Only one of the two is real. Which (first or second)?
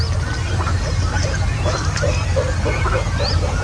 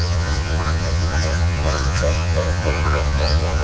first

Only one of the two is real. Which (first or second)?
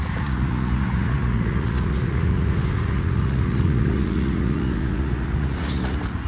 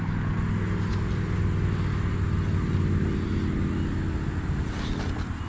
second